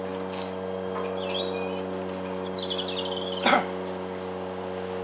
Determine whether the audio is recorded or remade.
recorded